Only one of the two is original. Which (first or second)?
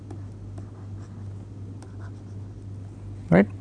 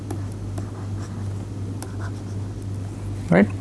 first